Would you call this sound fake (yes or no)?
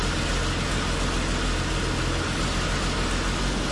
no